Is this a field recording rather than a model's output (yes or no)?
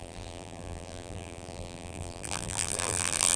no